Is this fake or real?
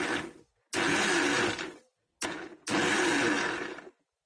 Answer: real